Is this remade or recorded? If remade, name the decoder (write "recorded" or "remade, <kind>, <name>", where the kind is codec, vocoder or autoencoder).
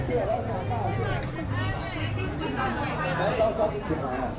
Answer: recorded